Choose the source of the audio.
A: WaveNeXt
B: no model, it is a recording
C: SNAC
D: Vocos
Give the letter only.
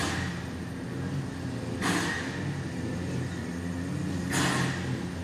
B